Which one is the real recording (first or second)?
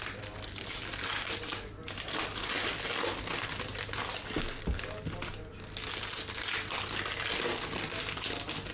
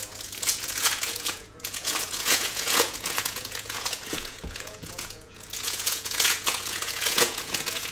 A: first